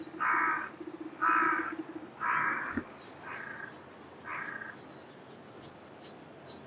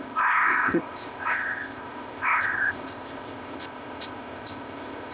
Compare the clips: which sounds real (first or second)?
first